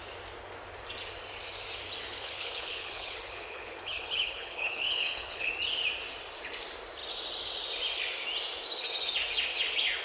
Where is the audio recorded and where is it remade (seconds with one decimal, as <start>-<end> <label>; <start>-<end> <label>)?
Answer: 0.0-2.1 recorded; 2.1-5.5 remade; 5.5-10.0 recorded